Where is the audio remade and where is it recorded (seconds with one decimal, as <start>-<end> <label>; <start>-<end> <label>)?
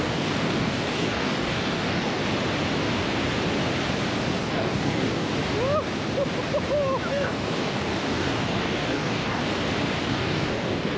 0.0-2.2 remade; 2.2-4.4 recorded; 4.4-5.3 remade; 5.3-7.1 recorded; 7.1-9.4 remade; 9.4-10.0 recorded; 10.0-11.0 remade